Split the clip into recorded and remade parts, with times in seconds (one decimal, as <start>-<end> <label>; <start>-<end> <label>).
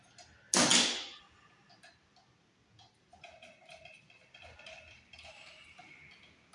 0.0-6.5 recorded